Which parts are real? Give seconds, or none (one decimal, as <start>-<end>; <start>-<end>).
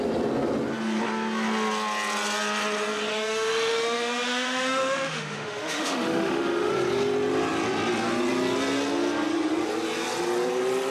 0.0-3.1; 6.7-10.9